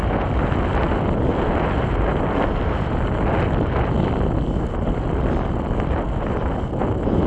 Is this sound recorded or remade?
recorded